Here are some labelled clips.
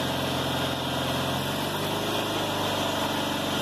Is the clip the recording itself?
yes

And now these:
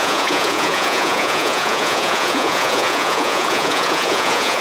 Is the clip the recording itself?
no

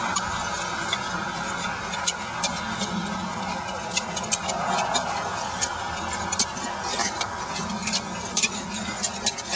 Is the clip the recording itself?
yes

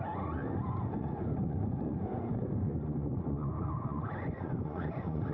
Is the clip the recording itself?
no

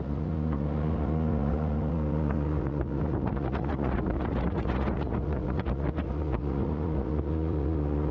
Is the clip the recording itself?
no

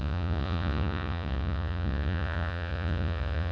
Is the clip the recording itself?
no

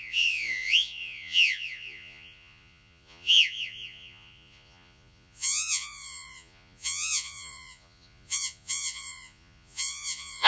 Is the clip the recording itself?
no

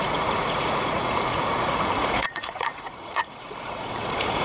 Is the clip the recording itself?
no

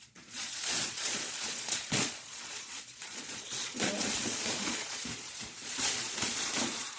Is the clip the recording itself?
no